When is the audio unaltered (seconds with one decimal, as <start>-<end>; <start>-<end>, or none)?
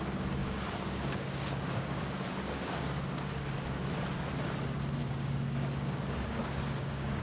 0.0-0.4; 2.8-5.0